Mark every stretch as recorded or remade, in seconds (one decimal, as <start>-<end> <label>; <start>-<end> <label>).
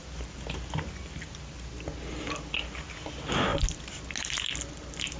0.0-5.2 recorded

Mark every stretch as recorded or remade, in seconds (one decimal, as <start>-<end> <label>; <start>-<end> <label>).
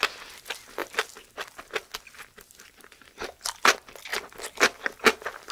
0.0-5.5 recorded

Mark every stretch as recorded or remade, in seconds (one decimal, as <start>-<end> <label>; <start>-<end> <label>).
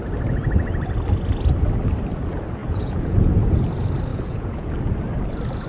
0.0-2.6 recorded; 2.6-3.6 remade; 3.6-4.1 recorded; 4.1-4.7 remade; 4.7-5.7 recorded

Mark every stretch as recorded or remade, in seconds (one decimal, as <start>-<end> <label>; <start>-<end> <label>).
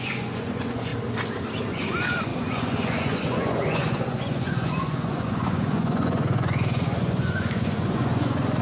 0.0-0.9 remade; 0.9-1.7 recorded; 1.7-8.6 remade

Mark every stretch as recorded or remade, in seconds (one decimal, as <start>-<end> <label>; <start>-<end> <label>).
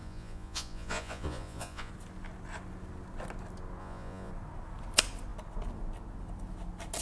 0.0-1.9 remade; 1.9-3.8 recorded; 3.8-4.3 remade; 4.3-7.0 recorded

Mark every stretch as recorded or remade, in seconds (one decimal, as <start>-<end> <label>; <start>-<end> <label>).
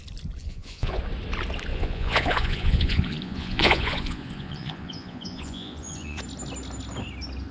0.0-0.4 recorded; 0.4-1.0 remade; 1.0-1.7 recorded; 1.7-6.2 remade; 6.2-7.5 recorded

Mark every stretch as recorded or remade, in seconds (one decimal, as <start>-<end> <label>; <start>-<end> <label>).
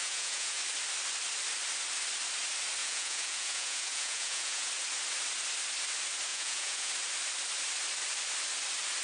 0.0-0.6 remade; 0.6-2.8 recorded; 2.8-4.7 remade; 4.7-6.3 recorded; 6.3-6.9 remade; 6.9-9.0 recorded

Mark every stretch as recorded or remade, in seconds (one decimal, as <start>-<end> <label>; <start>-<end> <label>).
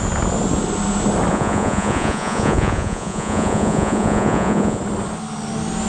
0.0-1.3 recorded; 1.3-4.8 remade; 4.8-5.9 recorded